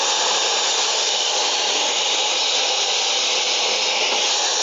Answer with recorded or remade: recorded